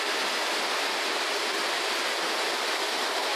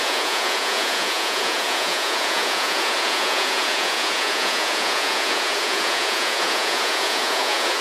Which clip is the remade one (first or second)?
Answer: second